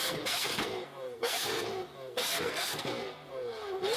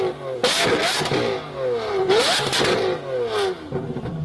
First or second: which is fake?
first